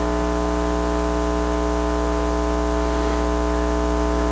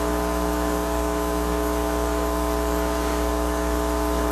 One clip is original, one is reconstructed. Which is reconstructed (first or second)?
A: second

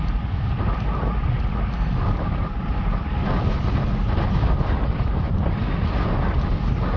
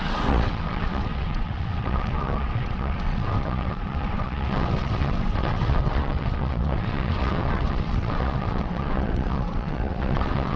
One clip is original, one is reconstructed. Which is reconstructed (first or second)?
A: second